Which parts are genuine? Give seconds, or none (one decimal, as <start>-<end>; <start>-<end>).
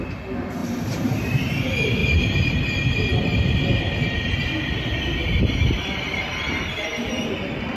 0.0-0.6; 1.5-7.8